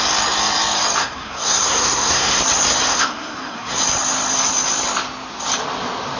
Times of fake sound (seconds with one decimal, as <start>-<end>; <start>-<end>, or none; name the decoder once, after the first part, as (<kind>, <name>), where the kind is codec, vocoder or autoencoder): 1.0-2.4 (codec, SNAC); 2.9-3.8